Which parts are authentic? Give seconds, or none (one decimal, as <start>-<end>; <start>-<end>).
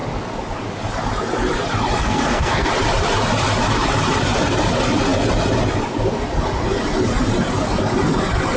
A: 0.0-2.0; 2.7-8.6